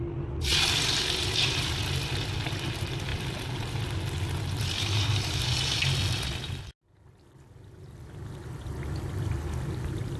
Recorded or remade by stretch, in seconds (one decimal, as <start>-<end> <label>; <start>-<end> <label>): 0.0-10.2 recorded